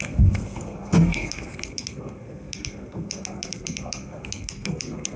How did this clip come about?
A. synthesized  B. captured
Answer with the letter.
A